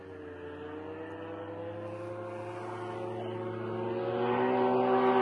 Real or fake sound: real